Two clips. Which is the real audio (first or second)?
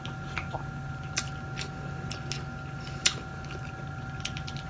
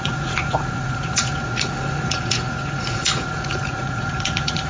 first